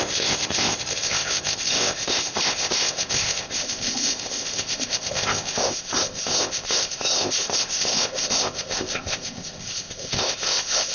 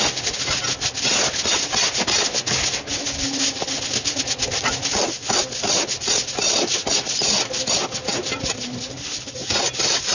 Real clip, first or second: second